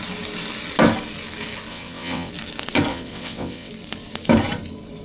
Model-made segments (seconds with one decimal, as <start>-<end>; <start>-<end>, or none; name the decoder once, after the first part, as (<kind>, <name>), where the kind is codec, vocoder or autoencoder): 1.7-2.3 (vocoder, WaveNeXt); 2.9-3.7